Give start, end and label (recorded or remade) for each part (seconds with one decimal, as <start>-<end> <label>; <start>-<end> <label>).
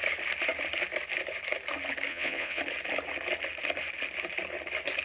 0.0-2.1 recorded; 2.1-2.6 remade; 2.6-5.0 recorded